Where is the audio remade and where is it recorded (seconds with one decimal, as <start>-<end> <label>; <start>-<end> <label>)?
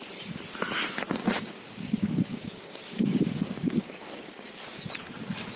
0.0-1.2 recorded; 1.2-4.6 remade; 4.6-5.6 recorded